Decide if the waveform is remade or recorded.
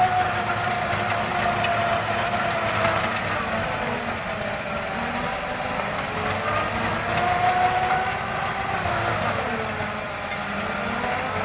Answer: recorded